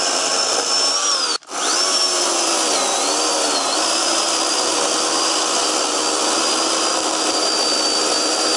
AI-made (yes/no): no